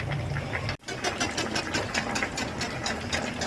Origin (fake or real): real